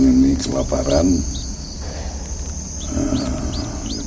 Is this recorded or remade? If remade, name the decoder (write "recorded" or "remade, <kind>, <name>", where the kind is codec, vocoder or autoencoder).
recorded